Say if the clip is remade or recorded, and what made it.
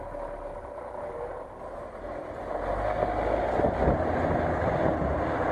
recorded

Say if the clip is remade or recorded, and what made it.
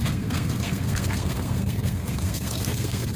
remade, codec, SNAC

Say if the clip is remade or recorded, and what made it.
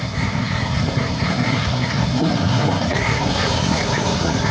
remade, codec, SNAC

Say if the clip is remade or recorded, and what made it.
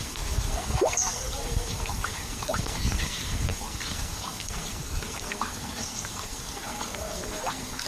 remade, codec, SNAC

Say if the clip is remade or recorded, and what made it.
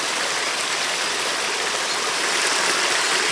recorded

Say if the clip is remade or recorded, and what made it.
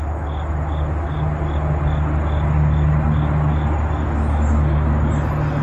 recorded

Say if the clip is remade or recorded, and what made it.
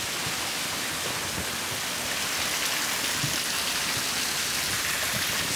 recorded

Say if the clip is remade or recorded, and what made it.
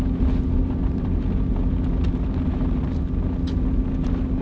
recorded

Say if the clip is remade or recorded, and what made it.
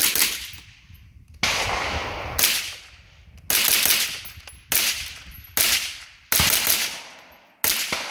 recorded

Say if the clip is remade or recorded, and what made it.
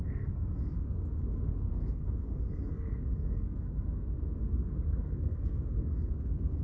remade, codec, SNAC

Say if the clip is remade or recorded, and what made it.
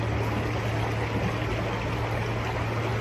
recorded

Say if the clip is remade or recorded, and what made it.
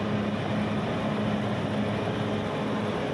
recorded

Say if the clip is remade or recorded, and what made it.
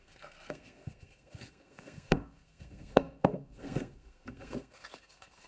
remade, codec, SNAC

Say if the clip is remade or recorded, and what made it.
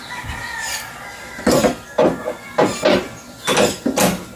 recorded